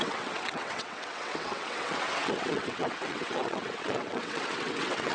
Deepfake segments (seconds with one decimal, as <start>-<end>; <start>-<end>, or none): 0.0-5.1